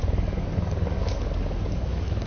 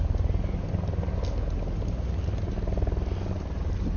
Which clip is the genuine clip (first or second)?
second